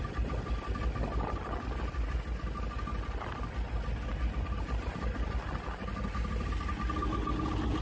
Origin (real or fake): real